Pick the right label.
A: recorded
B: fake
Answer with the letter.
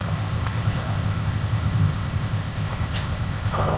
B